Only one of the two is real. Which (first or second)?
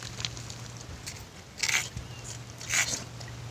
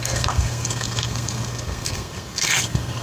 first